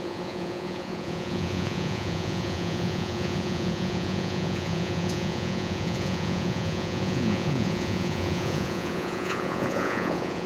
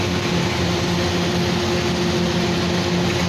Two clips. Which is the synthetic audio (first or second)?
first